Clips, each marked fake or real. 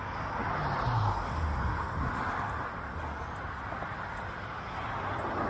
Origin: real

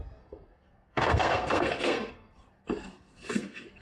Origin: fake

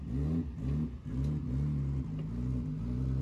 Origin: real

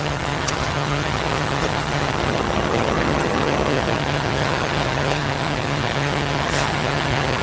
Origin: fake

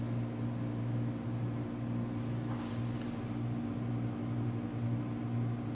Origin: real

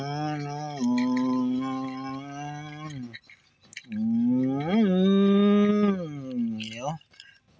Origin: real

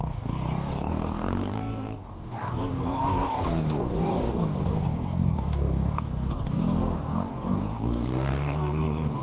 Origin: fake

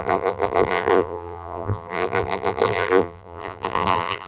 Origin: fake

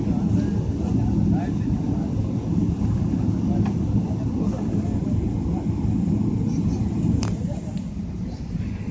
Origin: real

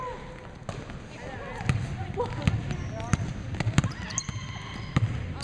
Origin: real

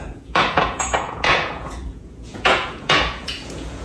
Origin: fake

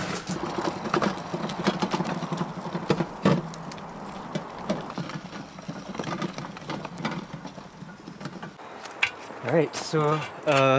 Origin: real